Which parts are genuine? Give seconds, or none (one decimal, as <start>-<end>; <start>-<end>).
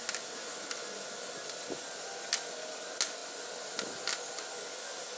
0.0-5.2